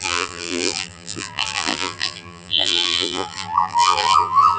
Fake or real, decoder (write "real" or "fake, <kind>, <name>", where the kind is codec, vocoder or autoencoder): fake, vocoder, BigVGAN v2